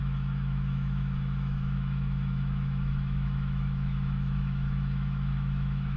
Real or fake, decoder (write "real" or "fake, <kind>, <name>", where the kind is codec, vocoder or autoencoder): fake, autoencoder, DAC-VAE